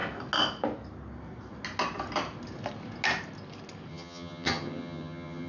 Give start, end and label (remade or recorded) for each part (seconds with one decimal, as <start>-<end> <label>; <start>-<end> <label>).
0.0-3.9 recorded; 3.9-5.5 remade